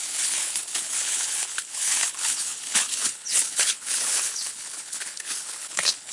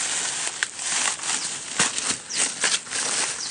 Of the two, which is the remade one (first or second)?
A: first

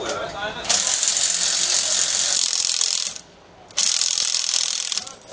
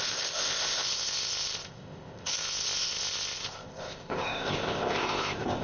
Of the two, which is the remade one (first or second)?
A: second